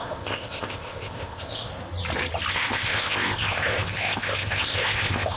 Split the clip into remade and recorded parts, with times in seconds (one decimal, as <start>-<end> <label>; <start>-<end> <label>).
0.0-1.7 remade; 1.7-2.5 recorded; 2.5-5.4 remade